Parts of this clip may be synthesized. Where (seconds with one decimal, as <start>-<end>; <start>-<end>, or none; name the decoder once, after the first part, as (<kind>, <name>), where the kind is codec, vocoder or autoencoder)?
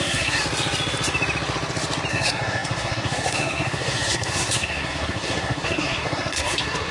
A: 0.0-0.4 (codec, SNAC); 2.1-6.9